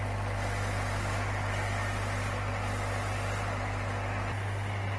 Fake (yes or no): no